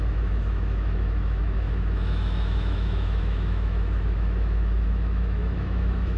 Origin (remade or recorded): remade